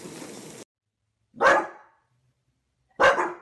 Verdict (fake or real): real